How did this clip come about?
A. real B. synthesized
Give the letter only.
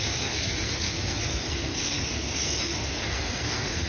B